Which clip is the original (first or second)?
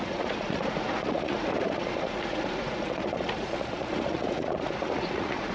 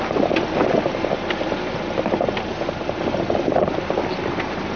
second